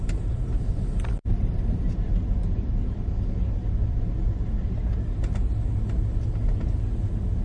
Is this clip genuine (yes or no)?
yes